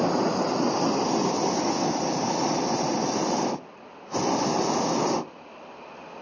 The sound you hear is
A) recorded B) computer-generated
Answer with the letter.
A